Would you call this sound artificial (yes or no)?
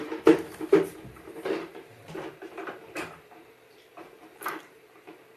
yes